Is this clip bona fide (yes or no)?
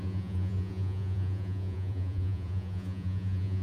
no